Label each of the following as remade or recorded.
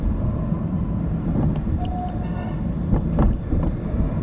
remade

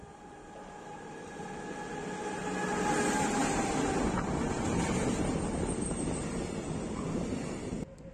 recorded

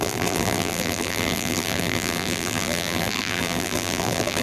remade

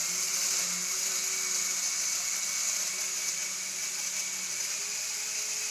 recorded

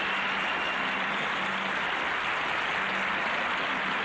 recorded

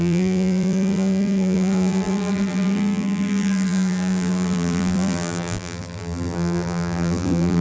remade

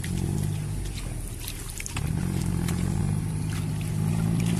recorded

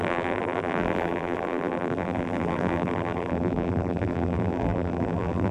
remade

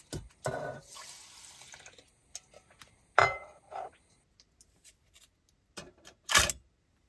recorded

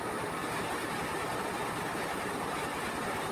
recorded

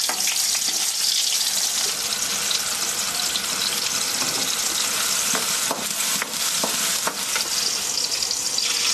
recorded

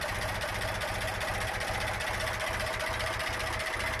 recorded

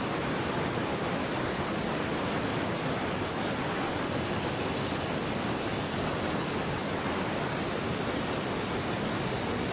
recorded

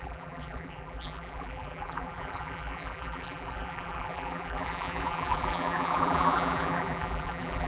remade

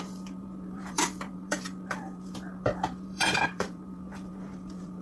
remade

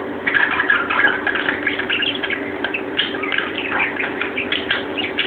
remade